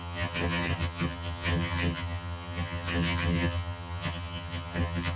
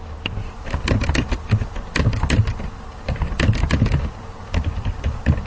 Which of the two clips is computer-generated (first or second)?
first